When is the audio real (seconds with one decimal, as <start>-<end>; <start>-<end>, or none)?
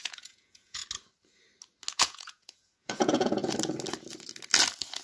0.8-1.9; 3.4-5.0